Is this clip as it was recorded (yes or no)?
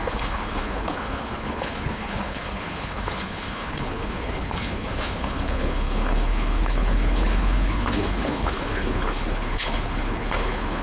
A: no